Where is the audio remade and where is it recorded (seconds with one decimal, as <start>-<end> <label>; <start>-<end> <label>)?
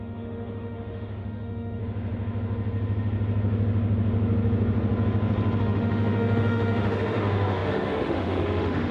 0.0-1.8 remade; 1.8-5.6 recorded; 5.6-8.9 remade